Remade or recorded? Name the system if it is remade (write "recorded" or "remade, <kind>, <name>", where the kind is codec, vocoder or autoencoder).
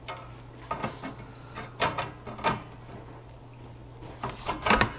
recorded